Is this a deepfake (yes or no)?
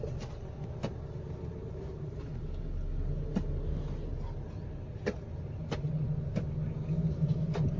no